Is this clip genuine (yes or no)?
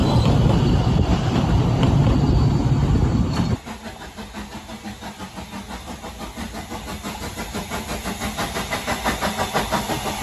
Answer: yes